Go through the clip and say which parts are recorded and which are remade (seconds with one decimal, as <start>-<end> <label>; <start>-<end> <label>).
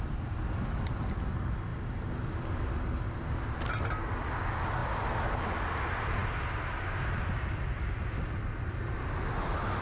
0.0-9.8 recorded